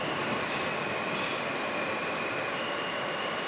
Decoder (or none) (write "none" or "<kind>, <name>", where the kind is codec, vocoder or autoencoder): none